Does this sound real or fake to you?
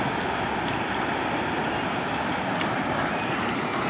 real